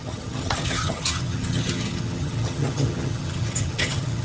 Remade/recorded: remade